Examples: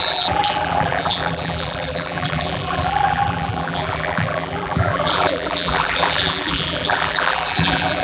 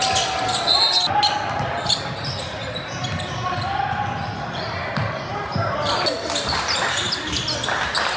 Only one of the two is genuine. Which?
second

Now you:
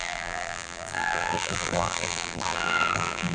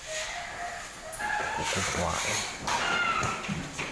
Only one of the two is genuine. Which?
second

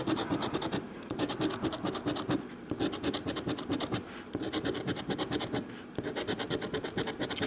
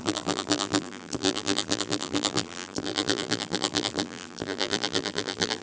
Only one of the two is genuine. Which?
first